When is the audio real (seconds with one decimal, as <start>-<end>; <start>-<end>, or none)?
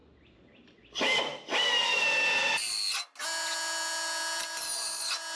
0.0-5.4